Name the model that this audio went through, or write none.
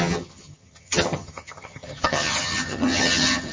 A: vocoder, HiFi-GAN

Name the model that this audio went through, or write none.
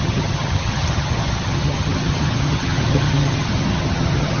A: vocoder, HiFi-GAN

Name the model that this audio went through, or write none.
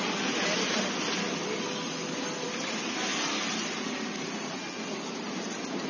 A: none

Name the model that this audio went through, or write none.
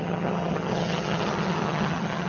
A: vocoder, HiFi-GAN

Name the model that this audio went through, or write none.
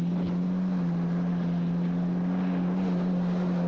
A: none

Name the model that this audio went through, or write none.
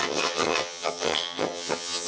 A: vocoder, HiFi-GAN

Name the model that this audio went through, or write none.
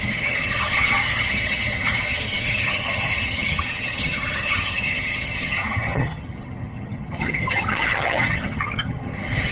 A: vocoder, HiFi-GAN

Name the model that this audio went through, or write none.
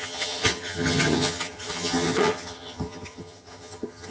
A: vocoder, HiFi-GAN